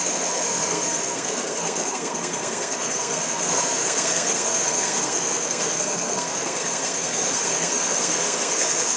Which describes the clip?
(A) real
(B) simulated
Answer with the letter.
B